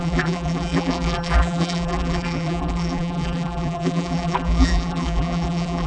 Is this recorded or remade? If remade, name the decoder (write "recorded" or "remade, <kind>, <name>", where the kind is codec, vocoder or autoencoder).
remade, vocoder, BigVGAN v2